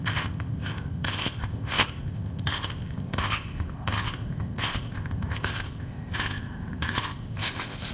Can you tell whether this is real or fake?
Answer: fake